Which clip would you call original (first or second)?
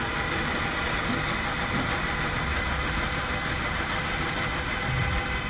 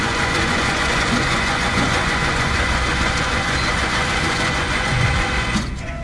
first